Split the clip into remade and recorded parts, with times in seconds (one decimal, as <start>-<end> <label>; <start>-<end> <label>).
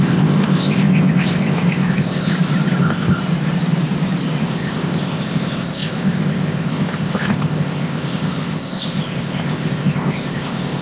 0.0-2.3 remade; 2.3-2.8 recorded; 2.8-3.2 remade; 3.2-4.4 recorded; 4.4-10.8 remade